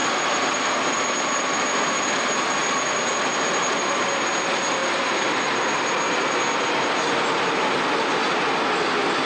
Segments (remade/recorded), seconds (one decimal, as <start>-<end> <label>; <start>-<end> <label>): 0.0-9.3 recorded